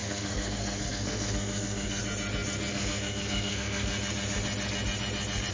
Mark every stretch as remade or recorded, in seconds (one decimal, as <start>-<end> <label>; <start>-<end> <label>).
0.0-2.0 remade; 2.0-2.7 recorded; 2.7-3.9 remade; 3.9-5.5 recorded